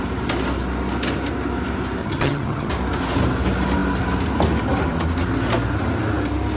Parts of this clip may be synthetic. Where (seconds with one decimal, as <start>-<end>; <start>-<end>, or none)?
2.0-2.7